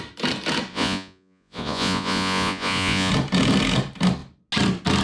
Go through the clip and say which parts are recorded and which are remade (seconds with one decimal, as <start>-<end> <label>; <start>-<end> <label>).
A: 0.0-0.7 recorded; 0.7-3.1 remade; 3.1-5.0 recorded